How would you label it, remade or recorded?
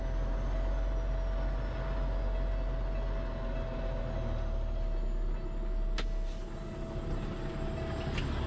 recorded